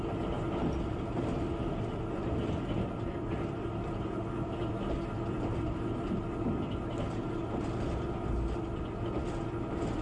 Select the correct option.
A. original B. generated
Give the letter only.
A